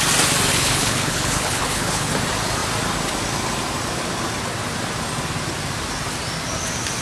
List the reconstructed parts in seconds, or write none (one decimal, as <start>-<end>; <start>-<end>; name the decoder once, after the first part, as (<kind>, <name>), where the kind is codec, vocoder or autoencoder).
0.5-2.1 (codec, HILCodec)